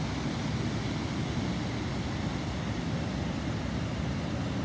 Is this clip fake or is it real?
real